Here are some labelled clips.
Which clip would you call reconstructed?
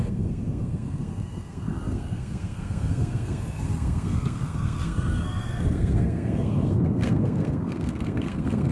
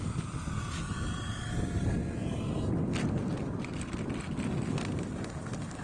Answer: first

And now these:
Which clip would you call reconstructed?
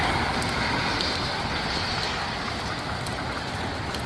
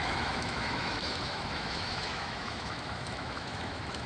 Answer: second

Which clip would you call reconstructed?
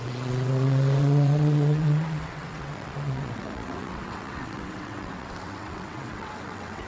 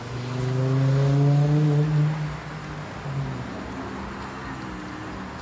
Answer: first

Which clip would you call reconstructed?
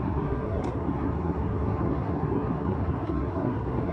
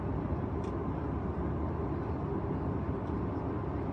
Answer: first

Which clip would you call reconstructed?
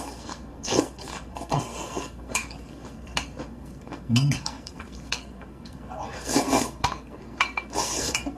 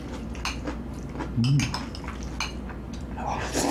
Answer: first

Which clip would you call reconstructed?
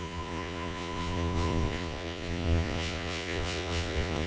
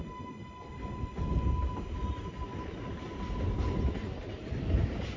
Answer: first